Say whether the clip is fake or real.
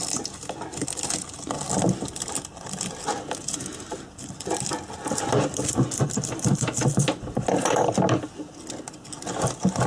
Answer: real